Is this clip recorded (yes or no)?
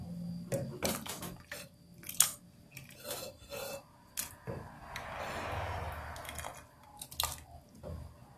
yes